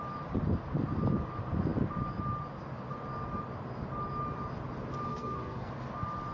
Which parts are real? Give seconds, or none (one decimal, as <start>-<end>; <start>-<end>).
0.0-5.1; 5.7-6.3

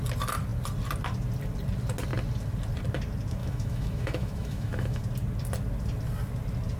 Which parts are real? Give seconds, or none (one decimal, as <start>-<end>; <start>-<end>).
0.0-3.4; 5.0-6.8

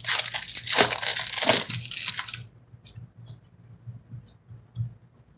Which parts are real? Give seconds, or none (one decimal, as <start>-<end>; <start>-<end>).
0.0-5.4

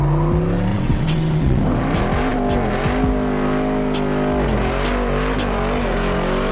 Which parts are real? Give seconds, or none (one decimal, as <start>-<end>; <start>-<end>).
0.0-0.7; 1.6-6.5

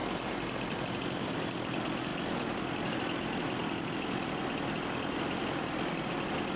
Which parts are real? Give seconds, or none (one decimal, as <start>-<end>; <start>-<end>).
0.0-6.6

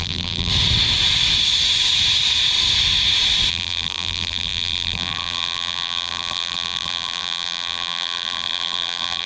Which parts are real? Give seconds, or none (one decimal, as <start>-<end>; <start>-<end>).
0.5-3.5

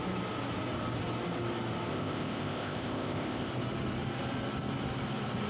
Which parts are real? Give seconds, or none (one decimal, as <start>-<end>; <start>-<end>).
0.0-1.9; 3.5-5.5

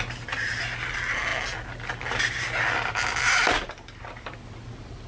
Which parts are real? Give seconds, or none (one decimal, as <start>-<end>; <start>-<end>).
0.0-5.1